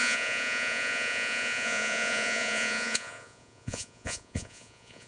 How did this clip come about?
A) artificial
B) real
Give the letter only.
A